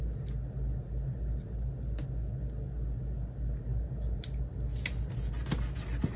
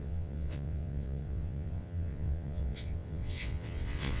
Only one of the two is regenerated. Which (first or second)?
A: second